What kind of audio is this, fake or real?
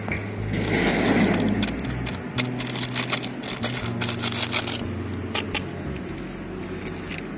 real